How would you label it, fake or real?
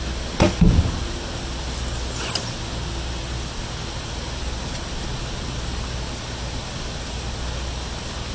real